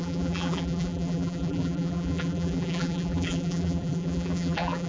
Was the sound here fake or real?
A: fake